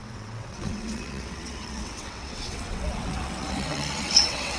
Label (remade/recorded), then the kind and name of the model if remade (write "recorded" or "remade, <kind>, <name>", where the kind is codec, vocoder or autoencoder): remade, vocoder, WaveNeXt